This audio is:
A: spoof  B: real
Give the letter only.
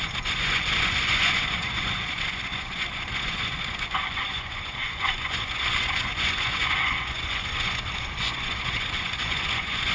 A